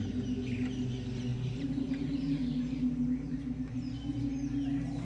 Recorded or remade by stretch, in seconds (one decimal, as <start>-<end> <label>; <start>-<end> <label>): 0.0-1.3 recorded; 1.3-4.3 remade; 4.3-5.0 recorded

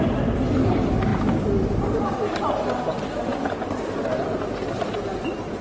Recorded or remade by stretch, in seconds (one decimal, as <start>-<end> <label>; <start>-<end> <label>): 0.0-5.6 remade

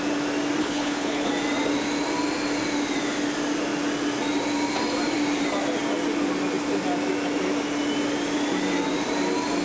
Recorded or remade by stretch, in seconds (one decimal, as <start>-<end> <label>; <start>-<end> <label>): 0.0-0.6 recorded; 0.6-1.3 remade; 1.3-9.6 recorded

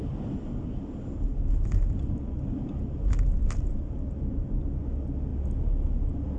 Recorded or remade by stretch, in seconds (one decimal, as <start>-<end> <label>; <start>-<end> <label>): 0.0-6.4 recorded

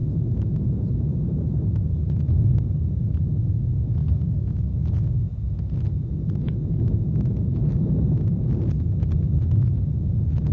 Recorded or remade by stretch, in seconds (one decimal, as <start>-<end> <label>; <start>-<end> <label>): 0.0-4.0 recorded; 4.0-4.6 remade; 4.6-10.5 recorded

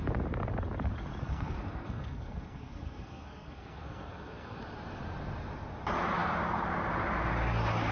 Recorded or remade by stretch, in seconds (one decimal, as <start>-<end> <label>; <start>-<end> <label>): 0.0-1.3 recorded; 1.3-4.6 remade; 4.6-7.9 recorded